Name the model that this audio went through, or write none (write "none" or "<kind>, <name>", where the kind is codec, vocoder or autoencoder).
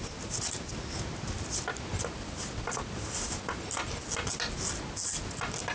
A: none